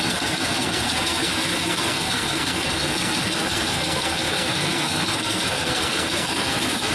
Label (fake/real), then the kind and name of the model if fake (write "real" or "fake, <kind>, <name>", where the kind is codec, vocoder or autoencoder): fake, codec, SNAC